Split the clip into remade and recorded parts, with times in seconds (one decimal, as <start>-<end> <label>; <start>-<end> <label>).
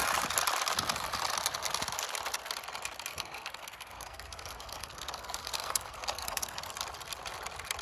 0.0-3.1 recorded; 3.1-6.7 remade; 6.7-7.8 recorded